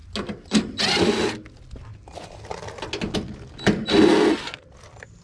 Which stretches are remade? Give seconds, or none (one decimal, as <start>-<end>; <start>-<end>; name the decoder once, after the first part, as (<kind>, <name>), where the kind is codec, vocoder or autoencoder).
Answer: none